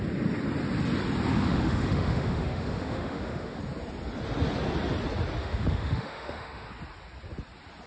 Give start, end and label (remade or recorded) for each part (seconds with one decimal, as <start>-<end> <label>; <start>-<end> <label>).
0.0-1.3 recorded; 1.3-3.6 remade; 3.6-5.4 recorded; 5.4-6.7 remade; 6.7-7.9 recorded